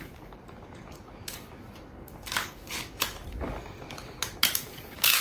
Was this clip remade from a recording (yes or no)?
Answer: yes